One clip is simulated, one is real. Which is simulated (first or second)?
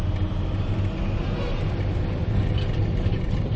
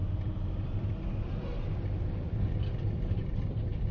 second